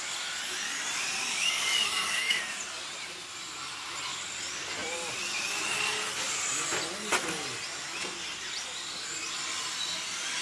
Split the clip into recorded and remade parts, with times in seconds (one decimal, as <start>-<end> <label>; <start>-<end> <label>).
0.0-1.2 recorded; 1.2-2.4 remade; 2.4-10.4 recorded